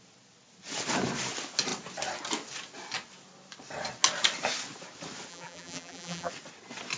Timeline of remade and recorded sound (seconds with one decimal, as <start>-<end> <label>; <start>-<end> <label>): 0.0-5.3 recorded; 5.3-6.3 remade; 6.3-7.0 recorded